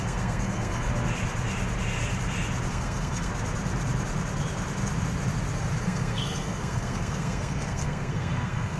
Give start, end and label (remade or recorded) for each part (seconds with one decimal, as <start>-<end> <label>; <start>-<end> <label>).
0.0-0.9 remade; 0.9-2.7 recorded; 2.7-3.3 remade; 3.3-5.8 recorded; 5.8-8.8 remade